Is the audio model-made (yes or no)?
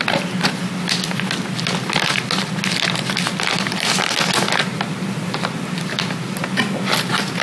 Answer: no